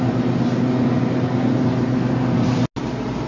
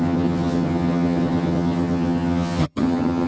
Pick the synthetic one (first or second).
second